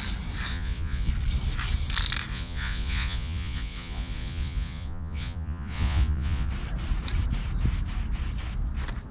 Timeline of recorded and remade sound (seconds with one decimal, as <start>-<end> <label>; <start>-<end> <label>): 0.0-0.5 recorded; 0.5-1.1 remade; 1.1-2.3 recorded; 2.3-6.5 remade; 6.5-9.1 recorded